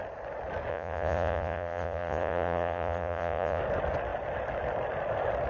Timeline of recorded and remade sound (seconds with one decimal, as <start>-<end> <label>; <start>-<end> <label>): 0.0-0.7 recorded; 0.7-3.6 remade; 3.6-5.5 recorded